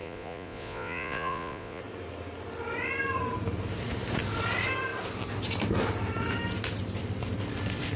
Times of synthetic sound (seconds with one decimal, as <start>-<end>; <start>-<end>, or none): 0.0-1.8